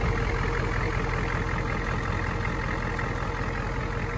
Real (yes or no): yes